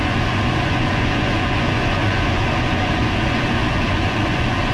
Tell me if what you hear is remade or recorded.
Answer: remade